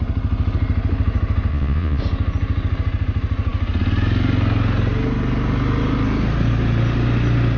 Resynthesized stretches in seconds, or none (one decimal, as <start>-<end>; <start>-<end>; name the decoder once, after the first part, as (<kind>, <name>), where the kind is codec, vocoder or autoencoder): 1.5-2.0 (vocoder, Vocos)